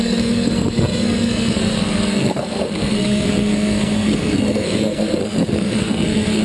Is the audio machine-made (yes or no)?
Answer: yes